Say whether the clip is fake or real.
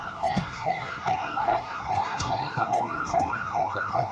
fake